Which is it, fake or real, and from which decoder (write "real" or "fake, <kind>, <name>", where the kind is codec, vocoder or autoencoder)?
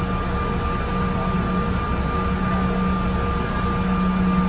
real